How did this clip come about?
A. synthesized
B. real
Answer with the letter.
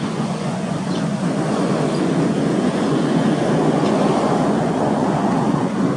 A